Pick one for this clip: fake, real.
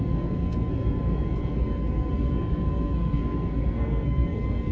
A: fake